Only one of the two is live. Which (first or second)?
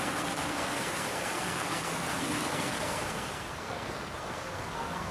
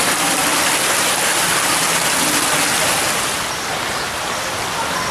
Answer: second